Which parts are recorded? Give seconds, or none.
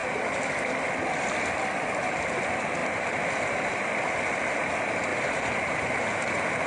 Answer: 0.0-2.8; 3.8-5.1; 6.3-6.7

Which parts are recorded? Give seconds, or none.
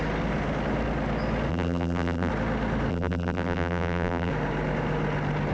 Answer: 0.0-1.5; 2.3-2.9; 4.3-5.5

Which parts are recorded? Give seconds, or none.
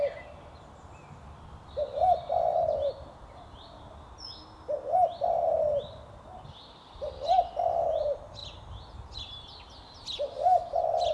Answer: 0.0-2.5; 3.4-11.1